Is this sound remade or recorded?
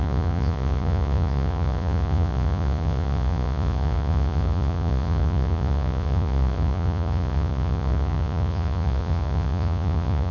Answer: remade